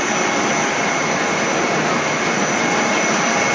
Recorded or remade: recorded